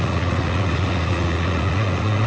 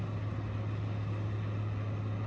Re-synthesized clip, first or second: first